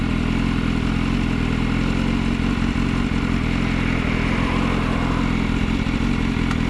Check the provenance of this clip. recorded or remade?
recorded